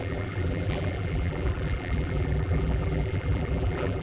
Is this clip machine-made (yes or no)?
yes